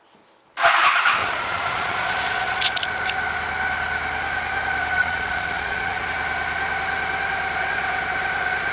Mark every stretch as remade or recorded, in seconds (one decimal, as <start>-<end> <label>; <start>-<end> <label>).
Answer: 0.0-1.2 recorded; 1.2-2.8 remade; 2.8-5.0 recorded; 5.0-6.0 remade; 6.0-8.7 recorded